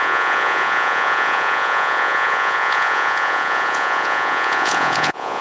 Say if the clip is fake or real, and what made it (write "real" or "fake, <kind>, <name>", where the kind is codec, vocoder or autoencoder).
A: fake, vocoder, Vocos